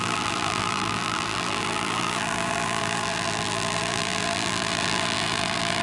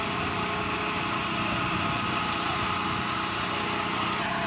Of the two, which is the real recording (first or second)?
second